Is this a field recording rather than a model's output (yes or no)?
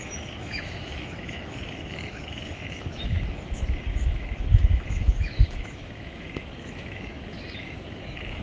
no